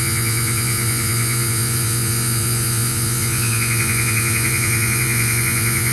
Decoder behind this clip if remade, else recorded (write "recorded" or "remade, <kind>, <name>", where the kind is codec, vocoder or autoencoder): remade, vocoder, Vocos